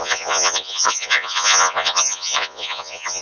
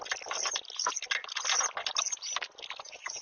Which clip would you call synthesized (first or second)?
first